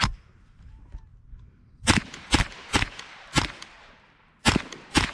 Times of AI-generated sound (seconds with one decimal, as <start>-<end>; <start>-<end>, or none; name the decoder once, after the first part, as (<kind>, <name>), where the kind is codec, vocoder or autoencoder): 0.0-5.1 (vocoder, BigVGAN v2)